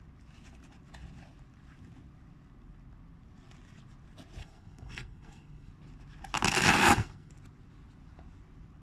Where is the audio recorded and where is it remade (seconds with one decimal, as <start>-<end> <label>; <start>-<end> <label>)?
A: 0.0-4.4 recorded; 4.4-5.7 remade; 5.7-6.8 recorded; 6.8-7.3 remade; 7.3-8.8 recorded